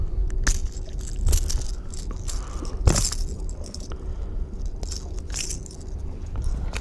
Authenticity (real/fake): real